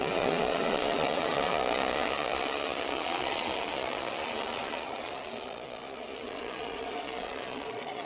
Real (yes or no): no